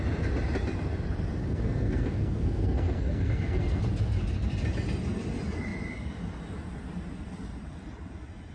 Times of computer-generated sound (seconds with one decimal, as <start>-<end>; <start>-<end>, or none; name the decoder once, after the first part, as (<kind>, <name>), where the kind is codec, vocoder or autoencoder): 1.4-3.8 (codec, SNAC)